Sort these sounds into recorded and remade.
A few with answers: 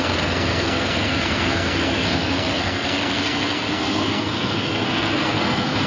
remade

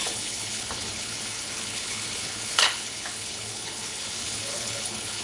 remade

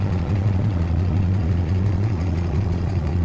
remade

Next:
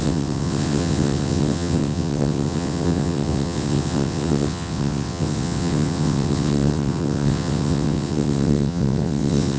remade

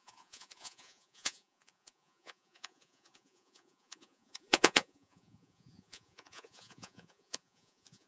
remade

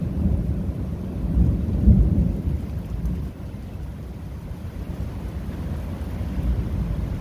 remade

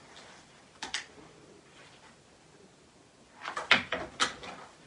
recorded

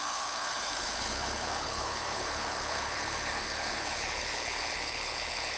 remade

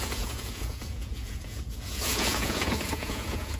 remade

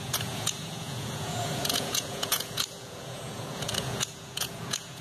remade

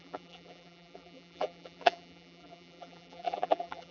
remade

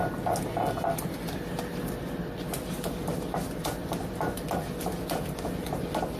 recorded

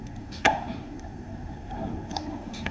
remade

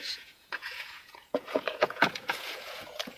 remade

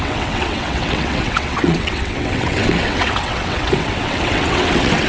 remade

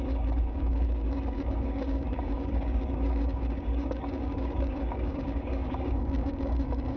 remade